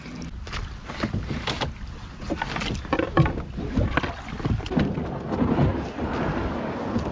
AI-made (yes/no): no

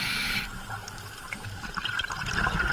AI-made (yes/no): yes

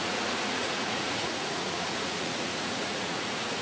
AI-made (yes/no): yes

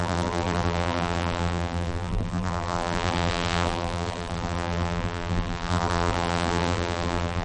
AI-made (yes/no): yes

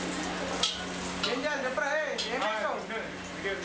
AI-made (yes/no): no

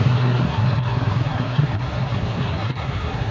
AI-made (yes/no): yes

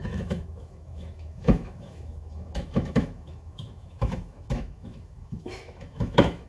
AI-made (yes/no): yes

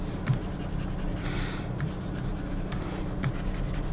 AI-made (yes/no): no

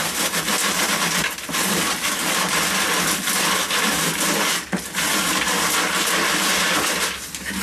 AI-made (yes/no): no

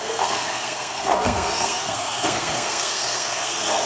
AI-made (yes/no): yes